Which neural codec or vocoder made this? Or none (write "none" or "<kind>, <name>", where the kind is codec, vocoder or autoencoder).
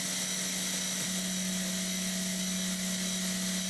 none